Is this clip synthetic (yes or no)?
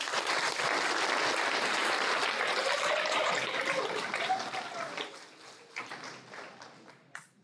no